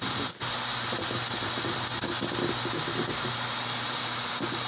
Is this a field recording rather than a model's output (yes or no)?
yes